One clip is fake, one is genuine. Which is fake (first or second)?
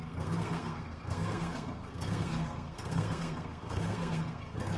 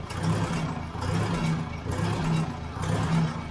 first